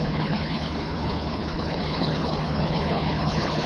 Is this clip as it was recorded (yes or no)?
no